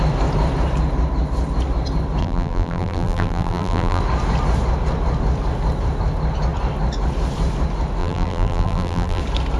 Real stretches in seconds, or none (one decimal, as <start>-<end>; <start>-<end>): 0.0-2.2; 4.0-8.0; 9.2-9.6